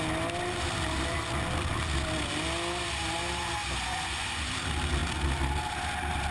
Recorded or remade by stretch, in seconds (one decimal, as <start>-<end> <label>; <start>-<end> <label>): 0.0-3.9 recorded; 3.9-4.5 remade; 4.5-6.3 recorded